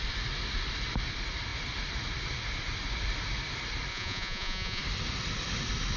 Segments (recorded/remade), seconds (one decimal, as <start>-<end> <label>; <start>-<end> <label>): 0.0-3.9 recorded; 3.9-4.8 remade; 4.8-6.0 recorded

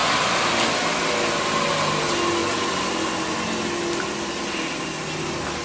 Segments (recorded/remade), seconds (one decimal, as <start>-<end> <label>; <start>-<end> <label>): 0.0-0.5 remade; 0.5-2.4 recorded; 2.4-3.0 remade; 3.0-5.6 recorded

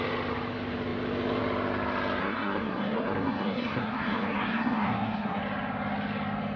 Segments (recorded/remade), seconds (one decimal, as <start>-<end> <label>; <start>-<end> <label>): 0.0-2.2 recorded; 2.2-5.4 remade; 5.4-6.6 recorded

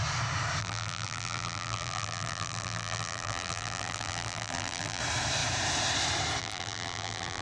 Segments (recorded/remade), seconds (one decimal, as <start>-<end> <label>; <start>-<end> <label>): 0.0-0.6 recorded; 0.6-5.0 remade; 5.0-6.4 recorded; 6.4-7.4 remade

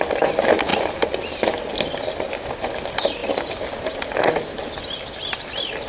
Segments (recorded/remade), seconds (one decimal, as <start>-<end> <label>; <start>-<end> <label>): 0.0-5.9 recorded

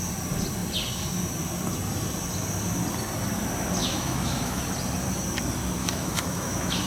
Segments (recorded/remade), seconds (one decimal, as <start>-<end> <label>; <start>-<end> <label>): 0.0-3.8 recorded; 3.8-4.6 remade; 4.6-5.8 recorded; 5.8-6.9 remade

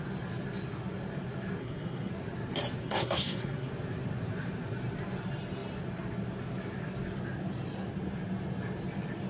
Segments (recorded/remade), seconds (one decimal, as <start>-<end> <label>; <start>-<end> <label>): 0.0-1.6 recorded; 1.6-2.1 remade; 2.1-2.8 recorded; 2.8-3.7 remade; 3.7-9.3 recorded